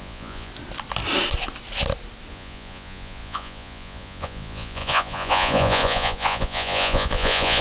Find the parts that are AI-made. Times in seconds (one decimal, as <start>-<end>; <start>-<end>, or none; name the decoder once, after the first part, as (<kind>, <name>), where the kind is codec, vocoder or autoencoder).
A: 0.0-0.5 (vocoder, Vocos); 2.3-7.6